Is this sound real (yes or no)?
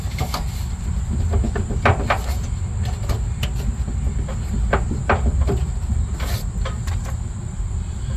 yes